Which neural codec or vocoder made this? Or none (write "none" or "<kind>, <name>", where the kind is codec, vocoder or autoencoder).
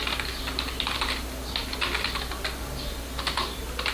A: none